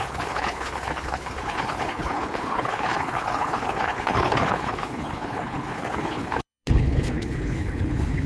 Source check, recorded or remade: remade